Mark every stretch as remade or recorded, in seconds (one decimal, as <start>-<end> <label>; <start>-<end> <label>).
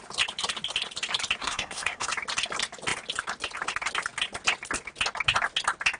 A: 0.0-1.4 recorded; 1.4-2.1 remade; 2.1-6.0 recorded